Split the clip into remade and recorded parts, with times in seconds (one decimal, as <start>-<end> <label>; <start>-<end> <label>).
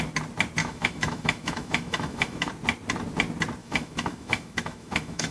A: 0.0-0.6 recorded; 0.6-2.5 remade; 2.5-3.6 recorded; 3.6-5.3 remade